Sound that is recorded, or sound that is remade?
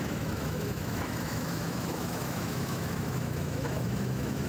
remade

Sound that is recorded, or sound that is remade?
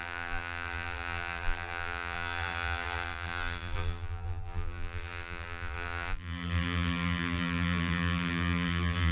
remade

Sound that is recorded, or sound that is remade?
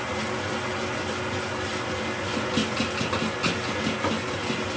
recorded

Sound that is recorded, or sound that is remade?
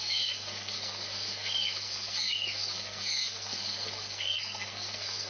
remade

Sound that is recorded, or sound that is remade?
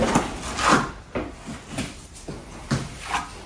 recorded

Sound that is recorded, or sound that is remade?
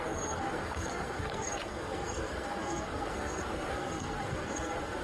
remade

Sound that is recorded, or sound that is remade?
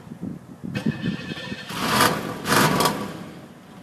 recorded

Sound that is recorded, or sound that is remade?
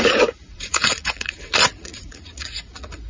remade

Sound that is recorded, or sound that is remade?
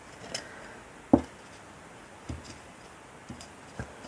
recorded